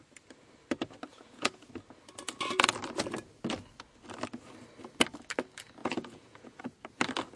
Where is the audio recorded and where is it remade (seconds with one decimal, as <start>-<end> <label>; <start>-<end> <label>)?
0.0-1.1 recorded; 1.1-1.7 remade; 1.7-5.8 recorded; 5.8-6.6 remade; 6.6-7.4 recorded